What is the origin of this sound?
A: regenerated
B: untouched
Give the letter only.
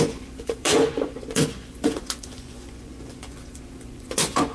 A